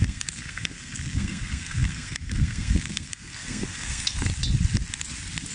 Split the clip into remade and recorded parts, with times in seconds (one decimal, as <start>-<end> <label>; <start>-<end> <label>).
0.0-4.3 remade; 4.3-5.5 recorded